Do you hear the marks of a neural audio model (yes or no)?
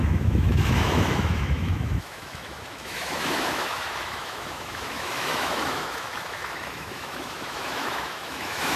yes